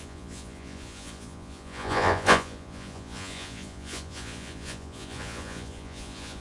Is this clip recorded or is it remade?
remade